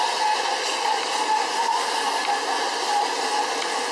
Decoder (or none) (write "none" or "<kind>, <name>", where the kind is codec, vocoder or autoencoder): none